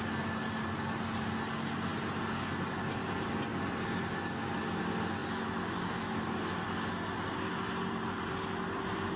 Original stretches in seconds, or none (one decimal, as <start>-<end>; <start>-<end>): 0.0-9.2

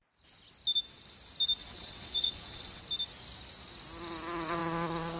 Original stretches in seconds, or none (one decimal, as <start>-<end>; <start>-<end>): 0.0-1.6; 2.8-5.2

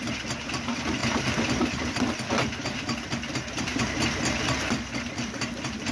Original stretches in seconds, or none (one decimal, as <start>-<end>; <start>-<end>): 0.0-5.9